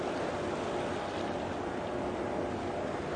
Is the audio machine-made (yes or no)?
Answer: no